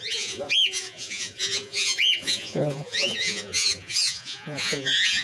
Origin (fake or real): fake